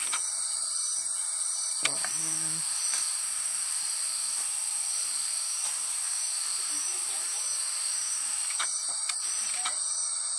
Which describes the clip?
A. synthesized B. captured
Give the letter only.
A